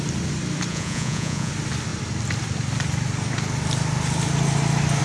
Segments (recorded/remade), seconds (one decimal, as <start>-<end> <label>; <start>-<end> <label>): 0.0-0.7 recorded; 0.7-1.5 remade; 1.5-5.0 recorded